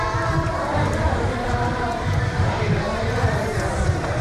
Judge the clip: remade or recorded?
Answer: remade